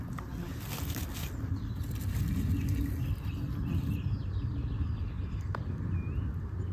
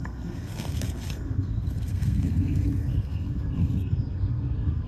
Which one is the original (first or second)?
first